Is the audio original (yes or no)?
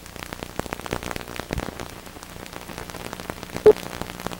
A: yes